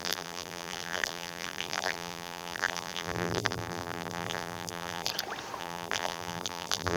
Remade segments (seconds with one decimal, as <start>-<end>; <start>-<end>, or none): 0.0-5.1; 5.6-7.0